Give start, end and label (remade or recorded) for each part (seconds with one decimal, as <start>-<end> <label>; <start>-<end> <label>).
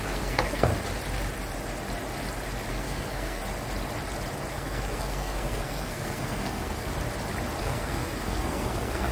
0.0-0.7 remade; 0.7-2.7 recorded; 2.7-3.4 remade; 3.4-4.5 recorded; 4.5-6.9 remade; 6.9-7.6 recorded; 7.6-9.1 remade